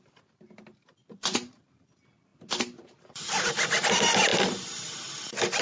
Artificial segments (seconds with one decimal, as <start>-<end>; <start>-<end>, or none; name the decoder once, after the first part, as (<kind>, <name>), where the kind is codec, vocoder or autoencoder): 1.0-1.7 (vocoder, BigVGAN v2)